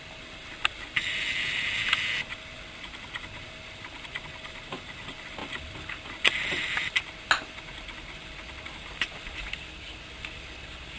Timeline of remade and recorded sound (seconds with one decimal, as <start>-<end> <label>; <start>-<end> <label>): 0.0-11.0 recorded